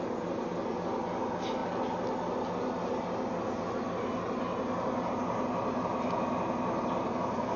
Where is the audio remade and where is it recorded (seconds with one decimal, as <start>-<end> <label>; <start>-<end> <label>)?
0.0-7.6 recorded